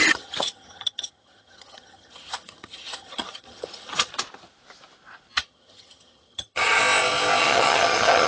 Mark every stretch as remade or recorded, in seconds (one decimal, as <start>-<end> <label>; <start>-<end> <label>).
0.0-4.1 remade; 4.1-5.3 recorded; 5.3-6.8 remade; 6.8-7.4 recorded; 7.4-8.3 remade